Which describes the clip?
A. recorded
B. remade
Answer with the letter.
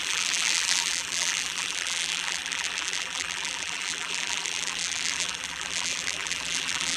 B